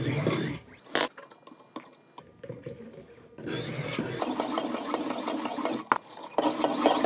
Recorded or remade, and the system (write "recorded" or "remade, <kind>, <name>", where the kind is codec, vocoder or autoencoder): recorded